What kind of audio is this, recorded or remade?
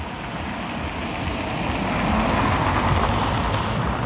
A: recorded